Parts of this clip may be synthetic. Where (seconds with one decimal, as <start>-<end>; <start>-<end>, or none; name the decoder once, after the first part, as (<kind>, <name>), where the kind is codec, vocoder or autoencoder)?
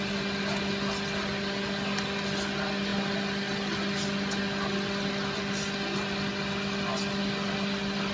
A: none